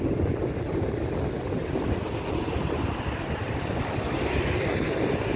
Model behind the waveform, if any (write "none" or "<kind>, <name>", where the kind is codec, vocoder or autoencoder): none